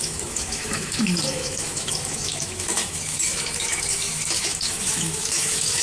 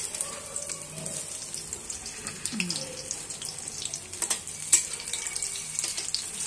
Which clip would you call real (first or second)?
second